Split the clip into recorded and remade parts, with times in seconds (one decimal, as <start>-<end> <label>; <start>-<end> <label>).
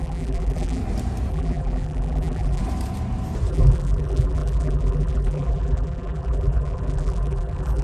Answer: 0.0-0.8 remade; 0.8-1.3 recorded; 1.3-2.6 remade; 2.6-3.5 recorded; 3.5-7.8 remade